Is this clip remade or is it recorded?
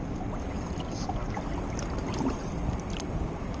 recorded